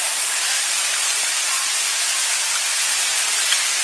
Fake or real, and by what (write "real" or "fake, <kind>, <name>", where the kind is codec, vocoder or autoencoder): real